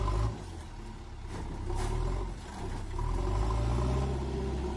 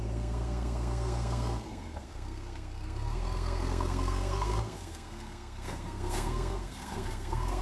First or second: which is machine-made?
second